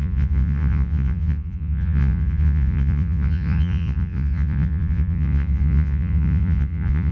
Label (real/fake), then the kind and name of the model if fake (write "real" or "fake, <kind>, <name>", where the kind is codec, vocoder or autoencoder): fake, vocoder, Vocos